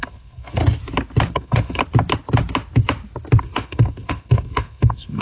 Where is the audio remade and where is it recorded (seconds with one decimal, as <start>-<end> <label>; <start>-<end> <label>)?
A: 0.0-0.6 remade; 0.6-1.3 recorded; 1.3-1.8 remade; 1.8-3.4 recorded; 3.4-5.2 remade